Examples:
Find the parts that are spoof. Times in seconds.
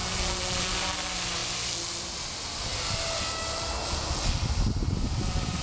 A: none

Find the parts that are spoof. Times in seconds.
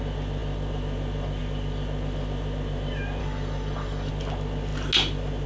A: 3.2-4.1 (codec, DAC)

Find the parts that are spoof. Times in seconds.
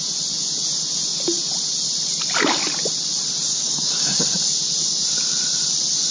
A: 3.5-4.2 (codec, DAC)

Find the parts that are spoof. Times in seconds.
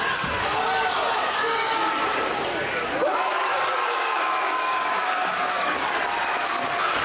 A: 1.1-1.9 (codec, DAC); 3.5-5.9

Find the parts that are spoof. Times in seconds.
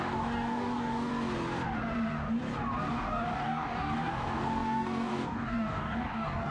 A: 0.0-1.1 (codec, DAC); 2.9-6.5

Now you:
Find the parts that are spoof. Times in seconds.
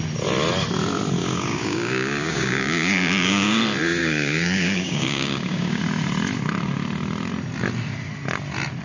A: 1.2-3.6 (codec, DAC); 4.0-5.8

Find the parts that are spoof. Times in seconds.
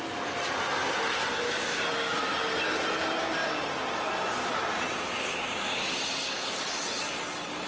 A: 1.3-2.2 (codec, DAC); 5.3-6.0